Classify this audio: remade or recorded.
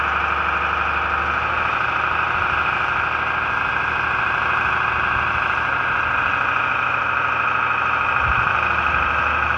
recorded